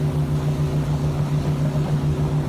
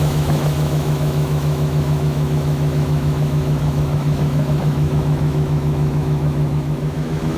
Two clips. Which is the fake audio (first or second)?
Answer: second